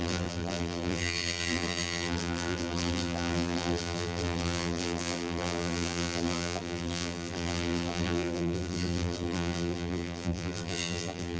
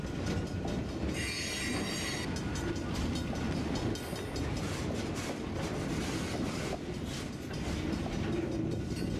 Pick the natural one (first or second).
second